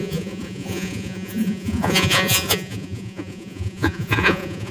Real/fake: fake